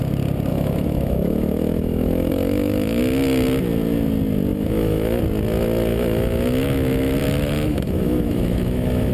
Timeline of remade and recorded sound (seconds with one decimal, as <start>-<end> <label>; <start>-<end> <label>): 0.0-0.5 recorded; 0.5-3.0 remade; 3.0-4.5 recorded; 4.5-5.2 remade; 5.2-5.9 recorded; 5.9-9.1 remade